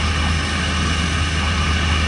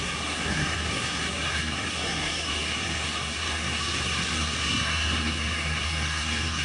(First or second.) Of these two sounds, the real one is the first